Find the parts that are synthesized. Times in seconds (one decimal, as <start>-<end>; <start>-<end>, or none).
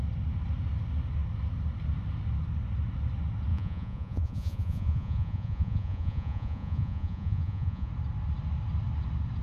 3.5-7.9